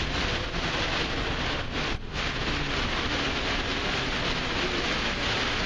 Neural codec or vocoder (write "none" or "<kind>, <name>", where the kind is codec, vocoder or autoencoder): none